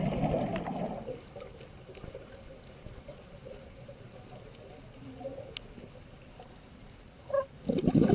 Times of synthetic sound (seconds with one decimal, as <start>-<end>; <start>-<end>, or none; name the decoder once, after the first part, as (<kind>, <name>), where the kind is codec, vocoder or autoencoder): none

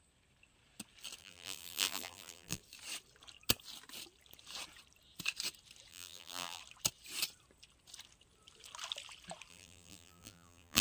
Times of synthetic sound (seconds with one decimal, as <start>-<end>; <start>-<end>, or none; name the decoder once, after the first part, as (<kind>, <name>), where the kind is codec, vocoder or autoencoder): 1.2-2.6 (vocoder, BigVGAN v2); 5.9-6.6; 9.5-10.8

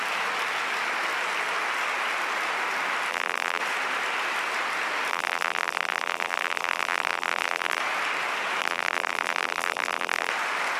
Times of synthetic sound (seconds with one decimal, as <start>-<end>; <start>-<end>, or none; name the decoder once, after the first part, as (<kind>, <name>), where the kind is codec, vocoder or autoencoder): 3.1-3.6 (vocoder, BigVGAN v2); 5.1-7.8; 8.6-10.3